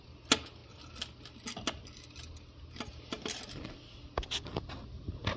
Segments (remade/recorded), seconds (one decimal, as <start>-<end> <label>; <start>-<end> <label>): 0.0-5.4 recorded